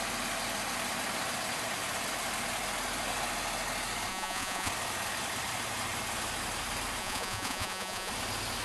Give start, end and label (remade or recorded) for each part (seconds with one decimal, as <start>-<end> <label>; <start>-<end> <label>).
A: 0.0-4.1 recorded; 4.1-4.7 remade; 4.7-7.0 recorded; 7.0-8.1 remade; 8.1-8.6 recorded